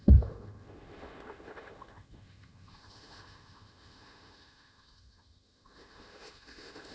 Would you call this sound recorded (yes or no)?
no